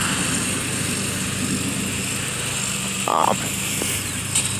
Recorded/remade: recorded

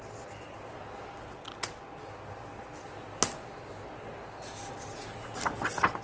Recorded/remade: recorded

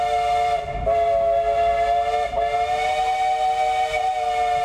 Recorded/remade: recorded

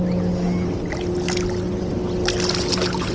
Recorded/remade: recorded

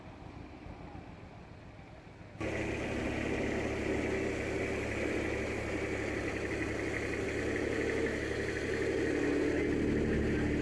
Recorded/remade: recorded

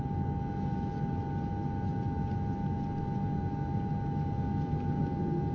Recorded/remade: recorded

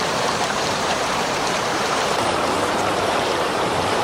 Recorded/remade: remade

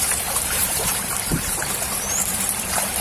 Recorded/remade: remade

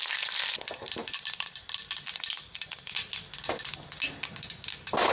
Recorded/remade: recorded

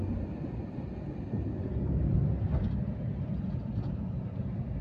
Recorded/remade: recorded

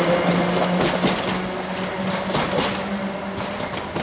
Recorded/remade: recorded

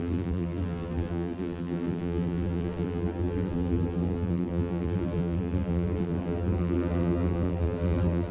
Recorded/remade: remade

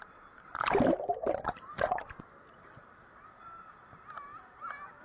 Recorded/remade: remade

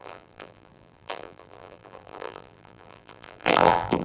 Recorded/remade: remade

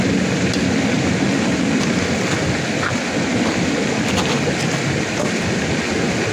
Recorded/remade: recorded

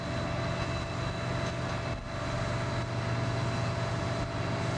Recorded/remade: recorded